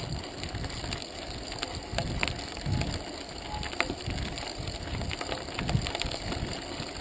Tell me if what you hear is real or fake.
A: real